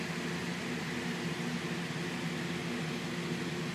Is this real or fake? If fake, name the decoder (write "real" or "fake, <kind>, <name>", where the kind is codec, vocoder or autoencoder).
real